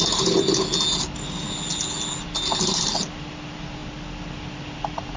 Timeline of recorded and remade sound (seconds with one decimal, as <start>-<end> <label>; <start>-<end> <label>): 0.0-5.2 recorded

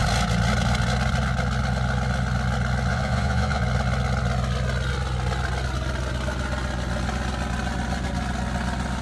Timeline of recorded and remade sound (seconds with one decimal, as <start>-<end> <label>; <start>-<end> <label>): 0.0-2.9 recorded; 2.9-3.6 remade; 3.6-9.0 recorded

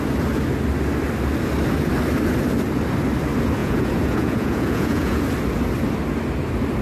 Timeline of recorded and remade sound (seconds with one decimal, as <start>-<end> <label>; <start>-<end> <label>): 0.0-3.6 recorded; 3.6-5.2 remade; 5.2-6.8 recorded

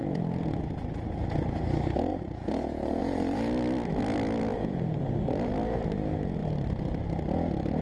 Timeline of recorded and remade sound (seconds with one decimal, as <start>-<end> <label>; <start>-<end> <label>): 0.0-0.6 remade; 0.6-2.1 recorded; 2.1-3.0 remade; 3.0-4.5 recorded; 4.5-5.0 remade; 5.0-7.8 recorded

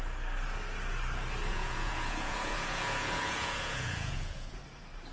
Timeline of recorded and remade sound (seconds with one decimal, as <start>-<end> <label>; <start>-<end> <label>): 0.0-1.5 recorded; 1.5-4.6 remade; 4.6-5.1 recorded

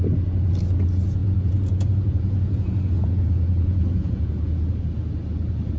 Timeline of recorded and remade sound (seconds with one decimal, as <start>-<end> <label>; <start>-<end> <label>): 0.0-1.2 recorded; 1.2-4.7 remade; 4.7-5.8 recorded

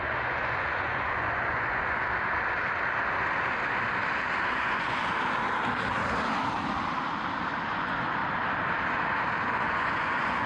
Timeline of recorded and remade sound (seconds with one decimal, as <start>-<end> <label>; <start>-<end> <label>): 0.0-2.1 remade; 2.1-4.5 recorded; 4.5-5.0 remade; 5.0-7.7 recorded; 7.7-8.2 remade; 8.2-9.4 recorded; 9.4-10.5 remade